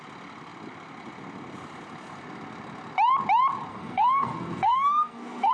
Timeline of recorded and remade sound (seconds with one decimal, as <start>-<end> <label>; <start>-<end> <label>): 0.0-3.7 recorded; 3.7-5.5 remade